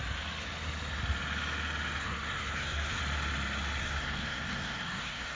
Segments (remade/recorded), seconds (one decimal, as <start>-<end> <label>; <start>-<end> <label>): 0.0-2.0 recorded; 2.0-3.0 remade; 3.0-3.8 recorded; 3.8-5.3 remade